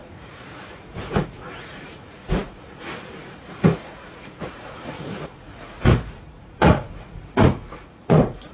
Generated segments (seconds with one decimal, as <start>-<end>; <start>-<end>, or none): 0.0-8.5